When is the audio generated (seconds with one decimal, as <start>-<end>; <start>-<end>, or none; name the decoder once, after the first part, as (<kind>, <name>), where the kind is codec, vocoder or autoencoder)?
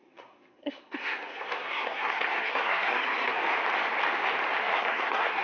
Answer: 0.0-3.4 (codec, SNAC); 4.6-5.4